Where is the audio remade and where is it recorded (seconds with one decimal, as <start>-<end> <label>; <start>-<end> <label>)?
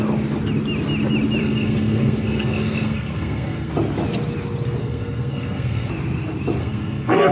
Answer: 0.0-1.4 recorded; 1.4-3.7 remade; 3.7-4.8 recorded; 4.8-5.9 remade; 5.9-6.6 recorded; 6.6-7.3 remade